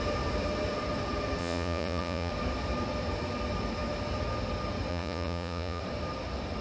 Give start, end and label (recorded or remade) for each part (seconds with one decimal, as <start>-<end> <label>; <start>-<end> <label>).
0.0-1.4 recorded; 1.4-2.3 remade; 2.3-4.9 recorded; 4.9-5.8 remade; 5.8-6.6 recorded